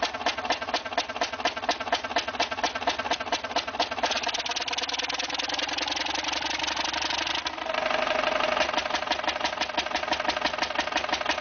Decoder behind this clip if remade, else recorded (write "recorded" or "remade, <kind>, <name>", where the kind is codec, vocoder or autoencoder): recorded